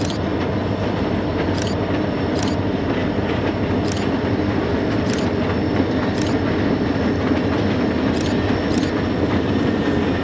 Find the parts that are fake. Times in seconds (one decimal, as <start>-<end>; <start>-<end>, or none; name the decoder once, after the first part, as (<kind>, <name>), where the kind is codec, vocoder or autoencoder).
3.0-6.0 (vocoder, BigVGAN v2)